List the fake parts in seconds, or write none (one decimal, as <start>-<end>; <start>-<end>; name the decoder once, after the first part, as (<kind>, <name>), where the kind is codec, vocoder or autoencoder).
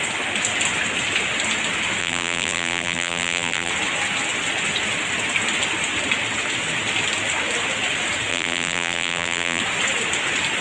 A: 2.0-3.7 (vocoder, BigVGAN v2); 8.3-9.6